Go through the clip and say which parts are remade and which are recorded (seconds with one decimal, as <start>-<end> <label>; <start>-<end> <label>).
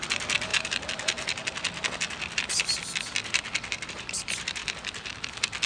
0.0-0.5 remade; 0.5-3.9 recorded; 3.9-4.6 remade; 4.6-5.7 recorded